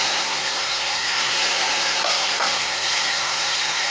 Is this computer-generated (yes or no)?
yes